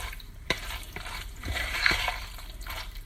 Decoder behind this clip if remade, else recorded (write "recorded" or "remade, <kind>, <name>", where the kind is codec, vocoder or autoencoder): remade, vocoder, BigVGAN v2